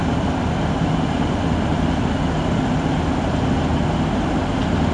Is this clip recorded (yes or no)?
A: yes